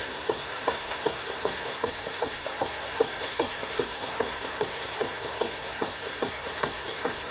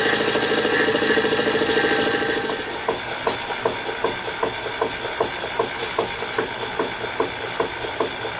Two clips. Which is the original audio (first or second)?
second